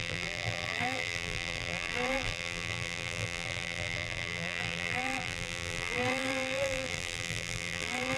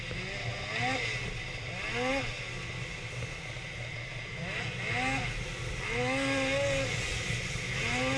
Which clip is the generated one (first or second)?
first